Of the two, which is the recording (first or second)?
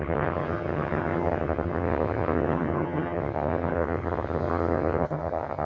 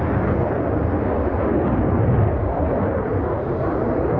second